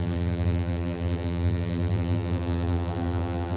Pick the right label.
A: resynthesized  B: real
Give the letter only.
A